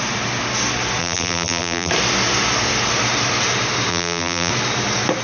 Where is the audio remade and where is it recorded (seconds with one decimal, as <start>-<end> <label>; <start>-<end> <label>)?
0.0-1.0 recorded; 1.0-1.9 remade; 1.9-3.9 recorded; 3.9-4.5 remade; 4.5-5.2 recorded